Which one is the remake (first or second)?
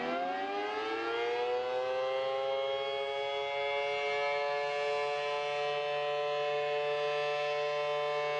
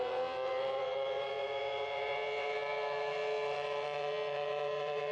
second